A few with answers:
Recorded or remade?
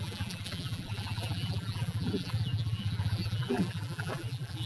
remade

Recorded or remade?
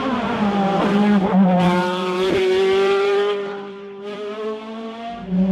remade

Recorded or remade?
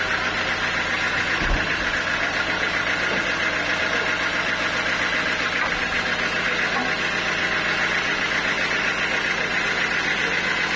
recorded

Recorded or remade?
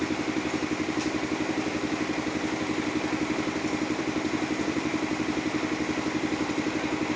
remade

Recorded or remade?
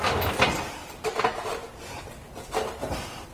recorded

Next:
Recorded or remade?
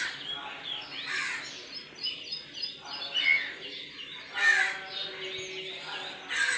recorded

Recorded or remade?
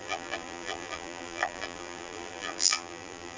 remade